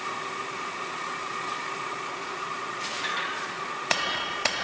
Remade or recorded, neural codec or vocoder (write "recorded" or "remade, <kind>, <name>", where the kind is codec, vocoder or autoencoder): remade, vocoder, Vocos